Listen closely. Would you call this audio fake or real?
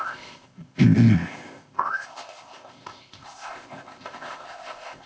fake